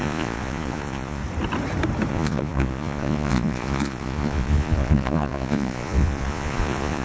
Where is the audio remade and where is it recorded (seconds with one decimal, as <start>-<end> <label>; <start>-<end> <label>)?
0.0-1.2 remade; 1.2-2.1 recorded; 2.1-7.0 remade